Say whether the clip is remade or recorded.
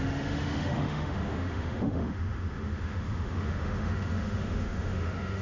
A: remade